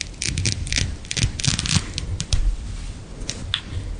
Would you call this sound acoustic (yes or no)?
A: yes